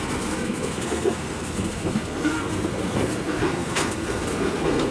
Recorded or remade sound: remade